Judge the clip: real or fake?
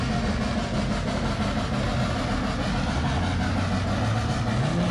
real